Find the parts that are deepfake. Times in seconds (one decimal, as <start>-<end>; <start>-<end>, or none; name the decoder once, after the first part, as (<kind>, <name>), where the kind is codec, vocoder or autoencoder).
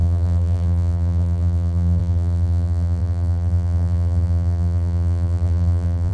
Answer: 0.0-6.1 (vocoder, BigVGAN v2)